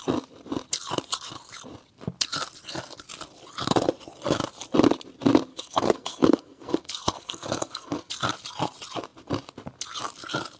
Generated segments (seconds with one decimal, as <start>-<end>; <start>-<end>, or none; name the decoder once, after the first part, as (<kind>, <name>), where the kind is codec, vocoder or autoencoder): 5.5-8.1 (codec, SNAC)

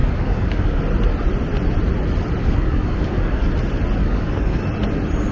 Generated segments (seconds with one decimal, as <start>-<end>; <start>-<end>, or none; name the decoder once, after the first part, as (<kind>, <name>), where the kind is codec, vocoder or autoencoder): 0.0-0.8 (codec, DAC); 2.4-3.5; 4.0-4.6